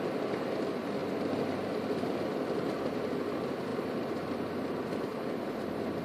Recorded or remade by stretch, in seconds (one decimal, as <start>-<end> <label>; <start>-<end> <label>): 0.0-6.0 recorded